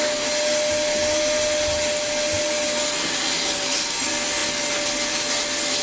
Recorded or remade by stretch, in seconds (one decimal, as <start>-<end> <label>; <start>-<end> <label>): 0.0-5.8 recorded